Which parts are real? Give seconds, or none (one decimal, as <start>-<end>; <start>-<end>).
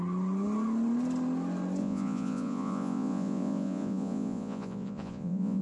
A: 0.0-1.8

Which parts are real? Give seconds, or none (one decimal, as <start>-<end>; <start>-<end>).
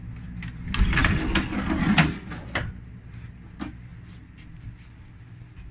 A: 0.0-5.7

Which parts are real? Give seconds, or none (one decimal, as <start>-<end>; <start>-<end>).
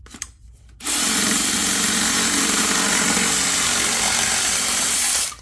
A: none